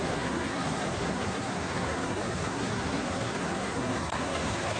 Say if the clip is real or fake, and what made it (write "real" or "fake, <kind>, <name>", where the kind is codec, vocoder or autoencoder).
fake, codec, SNAC